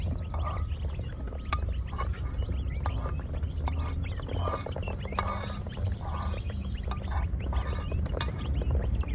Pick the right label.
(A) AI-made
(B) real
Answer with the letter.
A